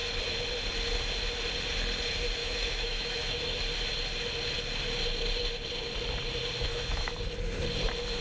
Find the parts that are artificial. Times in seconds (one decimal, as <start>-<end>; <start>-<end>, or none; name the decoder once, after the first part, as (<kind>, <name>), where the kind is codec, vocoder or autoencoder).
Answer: 2.4-3.6 (autoencoder, DAC-VAE); 6.7-7.2